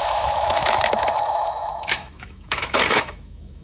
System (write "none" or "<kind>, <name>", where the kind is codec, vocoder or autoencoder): autoencoder, DAC-VAE